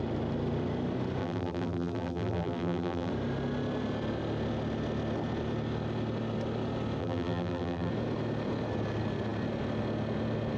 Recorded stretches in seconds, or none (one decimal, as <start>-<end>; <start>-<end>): 0.0-1.2; 3.1-7.0; 7.9-10.6

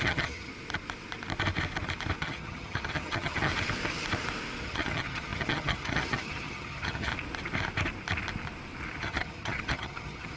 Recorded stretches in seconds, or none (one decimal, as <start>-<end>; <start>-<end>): 0.5-2.2; 3.5-4.6; 7.1-9.0

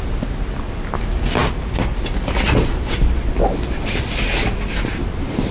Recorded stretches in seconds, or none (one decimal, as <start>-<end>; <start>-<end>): 0.0-5.5

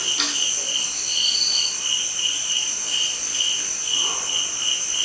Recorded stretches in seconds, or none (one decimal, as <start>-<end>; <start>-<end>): 4.0-5.0